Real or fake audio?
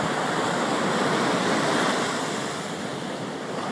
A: real